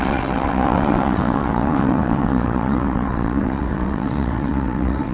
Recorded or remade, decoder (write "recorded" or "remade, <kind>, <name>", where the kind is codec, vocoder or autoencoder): remade, vocoder, WaveNeXt